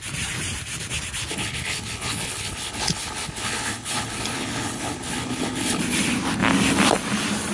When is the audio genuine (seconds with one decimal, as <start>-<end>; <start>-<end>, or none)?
0.0-1.3; 5.8-7.5